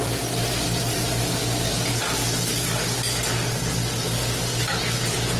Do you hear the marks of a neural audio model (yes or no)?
no